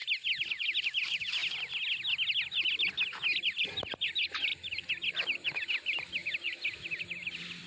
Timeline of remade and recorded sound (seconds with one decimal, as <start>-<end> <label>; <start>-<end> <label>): 0.0-1.4 remade; 1.4-3.6 recorded; 3.6-4.5 remade; 4.5-5.1 recorded; 5.1-7.7 remade